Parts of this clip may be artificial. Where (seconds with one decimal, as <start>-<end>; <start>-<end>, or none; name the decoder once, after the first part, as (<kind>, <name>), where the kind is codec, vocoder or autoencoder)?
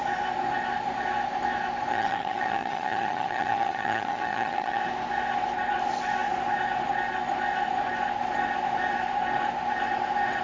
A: 1.9-4.8 (vocoder, HiFi-GAN)